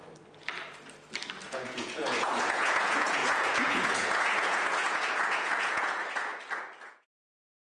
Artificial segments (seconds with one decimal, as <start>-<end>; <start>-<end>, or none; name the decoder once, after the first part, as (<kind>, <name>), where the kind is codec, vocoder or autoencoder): 1.4-6.3 (vocoder, Vocos); 6.8-7.7